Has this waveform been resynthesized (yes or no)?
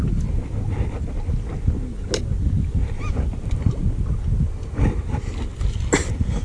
no